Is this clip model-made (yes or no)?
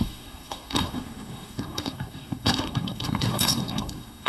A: yes